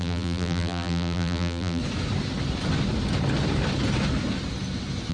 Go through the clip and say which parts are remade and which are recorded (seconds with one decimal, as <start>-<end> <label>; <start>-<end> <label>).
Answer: 0.0-1.8 remade; 1.8-5.1 recorded